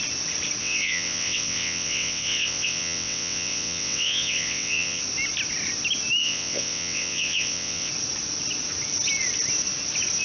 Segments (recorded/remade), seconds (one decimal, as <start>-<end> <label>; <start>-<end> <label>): 0.0-0.6 recorded; 0.6-5.0 remade; 5.0-6.2 recorded; 6.2-7.9 remade; 7.9-10.2 recorded

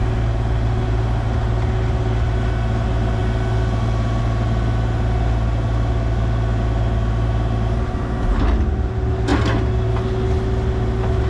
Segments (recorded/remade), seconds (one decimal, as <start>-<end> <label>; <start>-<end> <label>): 0.0-11.3 recorded